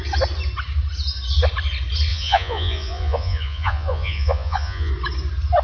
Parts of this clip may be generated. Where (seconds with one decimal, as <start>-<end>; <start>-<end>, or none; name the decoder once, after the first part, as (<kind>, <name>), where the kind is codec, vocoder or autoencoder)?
2.1-4.9 (vocoder, Vocos)